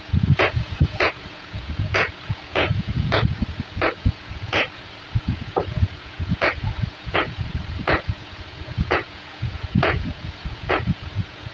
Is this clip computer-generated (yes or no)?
yes